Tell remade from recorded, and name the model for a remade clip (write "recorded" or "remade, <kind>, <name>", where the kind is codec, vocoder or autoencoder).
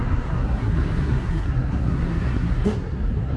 remade, codec, SNAC